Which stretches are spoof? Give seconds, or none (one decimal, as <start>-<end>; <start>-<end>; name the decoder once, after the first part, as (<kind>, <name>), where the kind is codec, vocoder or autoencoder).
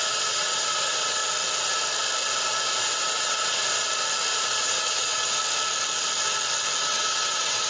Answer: 0.0-1.2 (vocoder, WaveNeXt); 2.8-3.6; 4.6-5.4; 6.8-7.7